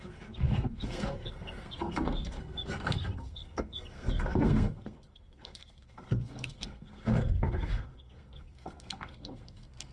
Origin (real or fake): fake